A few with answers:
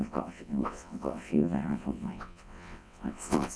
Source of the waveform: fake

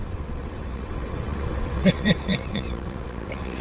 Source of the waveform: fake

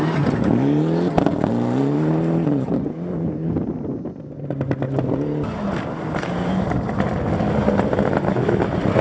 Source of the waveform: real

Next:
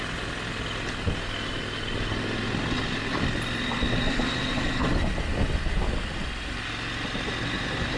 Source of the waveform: real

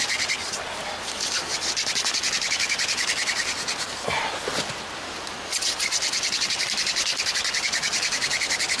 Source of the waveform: real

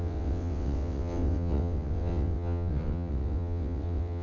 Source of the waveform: fake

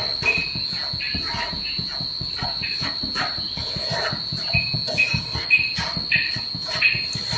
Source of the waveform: real